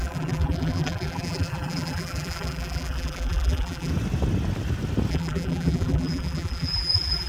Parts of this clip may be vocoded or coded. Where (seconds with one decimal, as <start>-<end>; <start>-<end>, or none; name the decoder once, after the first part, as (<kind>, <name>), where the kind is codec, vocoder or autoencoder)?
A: 0.0-3.9 (vocoder, BigVGAN v2); 5.1-7.3